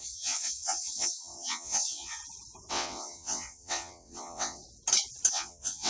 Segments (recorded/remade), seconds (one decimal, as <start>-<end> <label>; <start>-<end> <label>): 0.0-2.2 remade; 2.2-2.7 recorded; 2.7-4.6 remade; 4.6-5.3 recorded; 5.3-5.9 remade